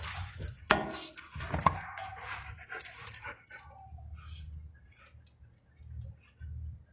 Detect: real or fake real